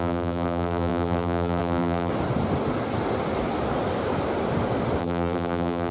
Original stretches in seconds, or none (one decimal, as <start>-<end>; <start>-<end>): 2.1-5.0